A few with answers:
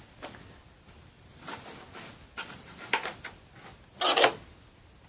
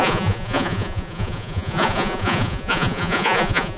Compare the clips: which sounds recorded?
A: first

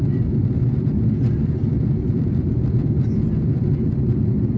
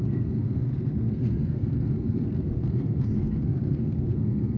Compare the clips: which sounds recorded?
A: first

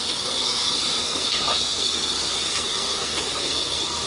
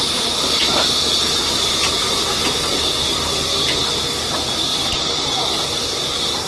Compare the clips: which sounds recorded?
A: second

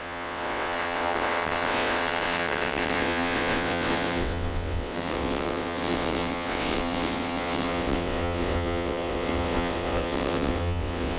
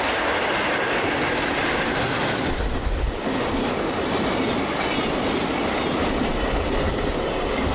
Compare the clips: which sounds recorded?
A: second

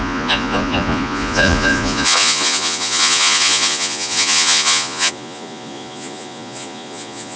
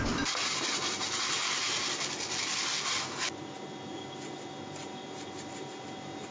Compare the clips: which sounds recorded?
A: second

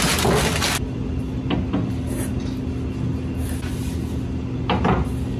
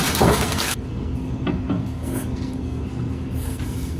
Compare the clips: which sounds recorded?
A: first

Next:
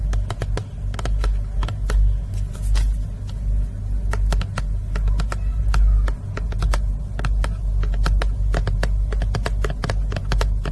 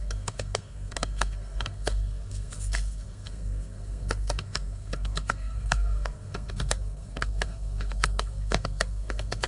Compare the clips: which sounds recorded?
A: first